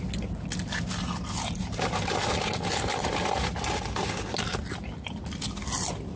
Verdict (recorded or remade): recorded